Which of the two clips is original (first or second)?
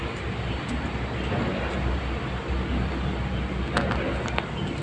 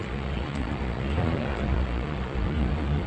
first